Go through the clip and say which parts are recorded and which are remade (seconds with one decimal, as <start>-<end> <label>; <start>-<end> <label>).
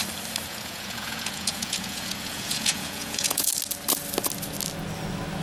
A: 0.0-0.5 recorded; 0.5-3.5 remade; 3.5-5.4 recorded